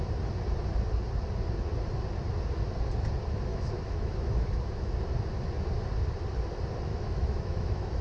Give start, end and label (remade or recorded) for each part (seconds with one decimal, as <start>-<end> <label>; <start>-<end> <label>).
0.0-3.5 recorded; 3.5-4.9 remade; 4.9-6.9 recorded; 6.9-8.0 remade